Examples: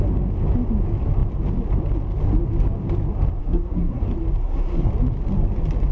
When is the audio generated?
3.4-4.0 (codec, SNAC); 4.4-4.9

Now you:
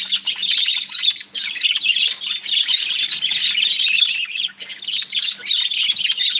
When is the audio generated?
none